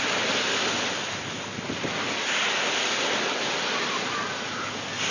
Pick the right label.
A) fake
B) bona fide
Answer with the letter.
B